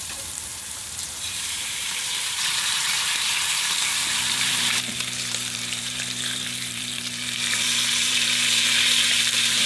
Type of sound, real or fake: fake